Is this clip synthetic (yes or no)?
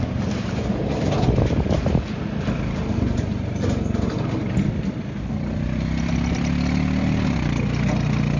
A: no